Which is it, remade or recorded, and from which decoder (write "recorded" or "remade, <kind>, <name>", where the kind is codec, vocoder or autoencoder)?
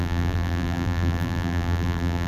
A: remade, vocoder, BigVGAN v2